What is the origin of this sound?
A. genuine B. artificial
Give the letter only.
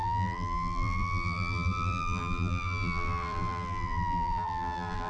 B